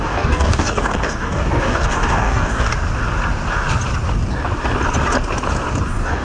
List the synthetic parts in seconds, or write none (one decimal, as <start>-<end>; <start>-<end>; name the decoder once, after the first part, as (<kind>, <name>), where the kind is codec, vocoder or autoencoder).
0.0-2.7 (codec, DAC); 5.8-6.2